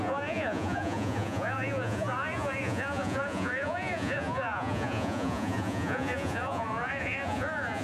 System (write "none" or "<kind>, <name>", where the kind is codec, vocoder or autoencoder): vocoder, Vocos